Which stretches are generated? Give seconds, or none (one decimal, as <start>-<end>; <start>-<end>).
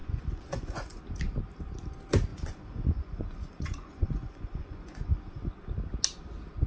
0.0-1.0; 2.3-5.5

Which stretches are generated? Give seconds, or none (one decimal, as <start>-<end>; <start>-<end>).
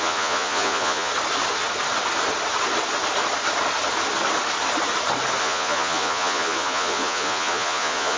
0.0-1.1; 5.4-8.2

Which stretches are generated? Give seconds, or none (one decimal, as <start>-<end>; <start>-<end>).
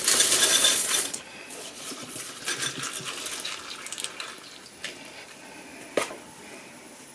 0.5-2.4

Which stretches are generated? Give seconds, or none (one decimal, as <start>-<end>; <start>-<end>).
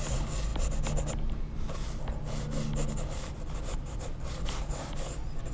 none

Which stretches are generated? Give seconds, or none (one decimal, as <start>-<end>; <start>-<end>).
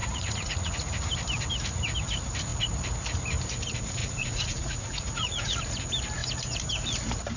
0.0-0.9; 4.0-5.6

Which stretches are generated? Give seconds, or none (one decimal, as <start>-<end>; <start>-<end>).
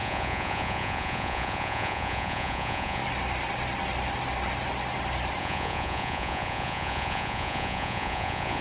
0.0-3.0; 5.4-8.6